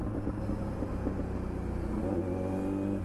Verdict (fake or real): real